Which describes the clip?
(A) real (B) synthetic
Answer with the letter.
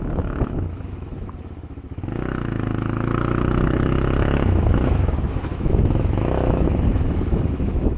B